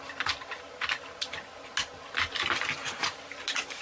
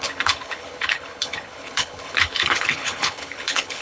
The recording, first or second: first